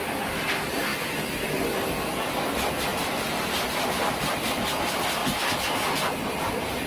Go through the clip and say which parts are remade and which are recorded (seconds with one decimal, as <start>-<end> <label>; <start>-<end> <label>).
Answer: 0.0-0.9 remade; 0.9-2.3 recorded; 2.3-5.2 remade; 5.2-6.3 recorded; 6.3-6.9 remade